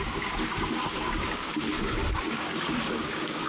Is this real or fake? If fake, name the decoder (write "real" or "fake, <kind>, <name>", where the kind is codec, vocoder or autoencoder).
fake, codec, DAC